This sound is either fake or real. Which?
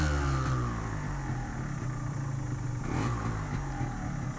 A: real